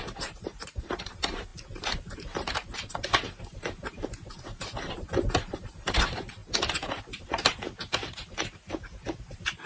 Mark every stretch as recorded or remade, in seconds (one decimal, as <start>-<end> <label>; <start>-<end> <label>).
0.0-9.7 remade